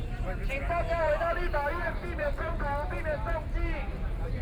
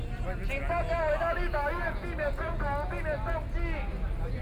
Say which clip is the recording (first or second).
second